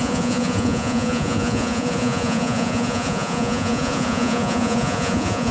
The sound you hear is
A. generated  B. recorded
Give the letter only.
A